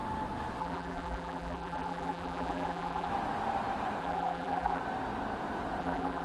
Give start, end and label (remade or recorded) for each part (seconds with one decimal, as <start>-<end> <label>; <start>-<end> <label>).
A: 0.0-0.6 recorded; 0.6-3.1 remade; 3.1-4.0 recorded; 4.0-4.8 remade; 4.8-5.8 recorded; 5.8-6.2 remade